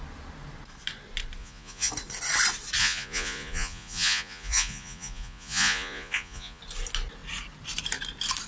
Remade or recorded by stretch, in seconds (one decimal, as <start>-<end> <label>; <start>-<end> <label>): 0.0-1.4 recorded; 1.4-1.9 remade; 1.9-2.8 recorded; 2.8-6.6 remade; 6.6-8.5 recorded